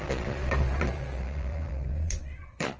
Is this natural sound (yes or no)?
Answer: no